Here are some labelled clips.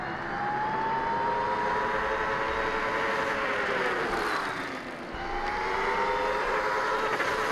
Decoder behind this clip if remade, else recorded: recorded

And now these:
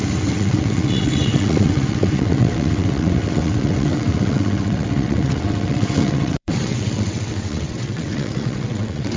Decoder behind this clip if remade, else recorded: remade, vocoder, WaveNeXt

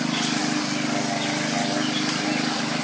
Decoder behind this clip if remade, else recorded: recorded